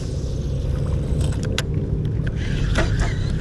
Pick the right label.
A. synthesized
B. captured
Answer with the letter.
B